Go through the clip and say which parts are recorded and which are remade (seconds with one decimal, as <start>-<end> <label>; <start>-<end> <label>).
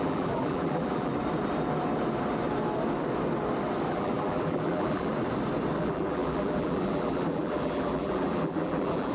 0.0-1.1 remade; 1.1-3.9 recorded; 3.9-5.1 remade; 5.1-5.8 recorded; 5.8-9.1 remade